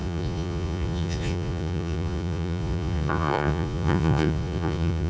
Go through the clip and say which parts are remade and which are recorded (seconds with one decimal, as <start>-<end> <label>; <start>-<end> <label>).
0.0-5.1 remade